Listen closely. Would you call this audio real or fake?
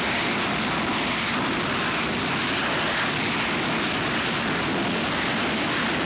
fake